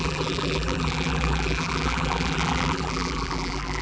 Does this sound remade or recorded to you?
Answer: remade